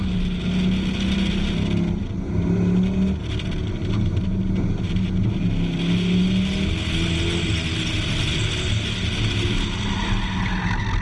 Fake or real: real